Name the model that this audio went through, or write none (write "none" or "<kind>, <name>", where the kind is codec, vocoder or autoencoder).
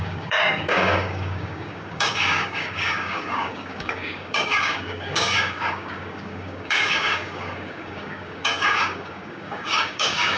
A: codec, DAC